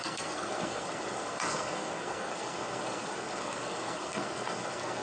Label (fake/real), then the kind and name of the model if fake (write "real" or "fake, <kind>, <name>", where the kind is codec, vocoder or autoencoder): fake, codec, SNAC